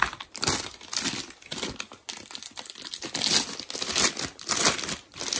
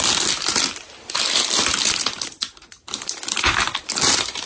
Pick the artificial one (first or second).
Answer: first